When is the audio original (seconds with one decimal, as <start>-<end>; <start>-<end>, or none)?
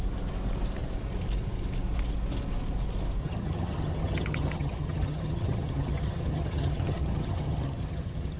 0.0-3.2